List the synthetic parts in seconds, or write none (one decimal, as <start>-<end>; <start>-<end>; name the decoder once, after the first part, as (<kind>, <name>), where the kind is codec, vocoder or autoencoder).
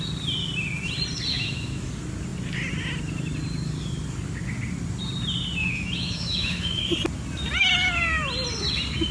1.3-1.9 (autoencoder, DAC-VAE); 5.6-6.8